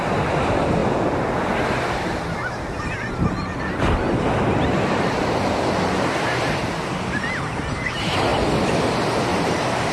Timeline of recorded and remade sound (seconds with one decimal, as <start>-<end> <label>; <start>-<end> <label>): 0.0-9.3 recorded; 9.3-9.9 remade